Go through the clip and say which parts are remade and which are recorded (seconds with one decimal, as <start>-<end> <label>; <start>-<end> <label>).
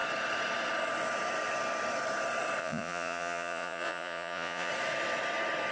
0.0-2.6 recorded; 2.6-4.7 remade; 4.7-5.7 recorded